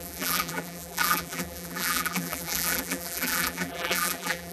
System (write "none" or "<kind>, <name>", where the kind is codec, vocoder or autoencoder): vocoder, BigVGAN v2